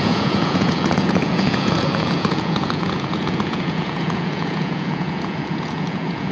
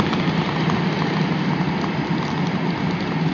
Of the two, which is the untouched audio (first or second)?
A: second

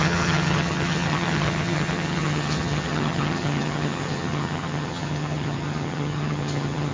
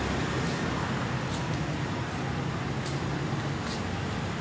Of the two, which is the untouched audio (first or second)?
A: second